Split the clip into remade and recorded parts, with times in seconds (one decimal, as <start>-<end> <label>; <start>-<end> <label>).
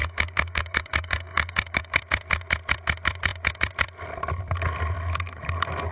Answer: 0.0-2.0 remade; 2.0-5.9 recorded